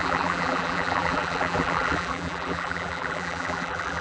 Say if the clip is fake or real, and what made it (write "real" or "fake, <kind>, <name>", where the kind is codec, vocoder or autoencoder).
fake, vocoder, BigVGAN v2